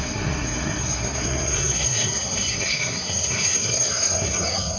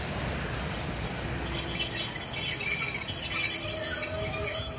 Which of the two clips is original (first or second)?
second